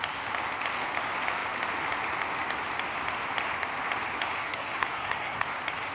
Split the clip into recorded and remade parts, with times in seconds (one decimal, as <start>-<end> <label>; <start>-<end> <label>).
0.0-4.4 recorded; 4.4-5.5 remade; 5.5-5.9 recorded